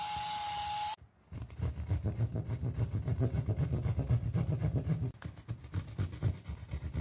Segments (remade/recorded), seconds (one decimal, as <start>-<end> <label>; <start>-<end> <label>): 0.0-7.0 recorded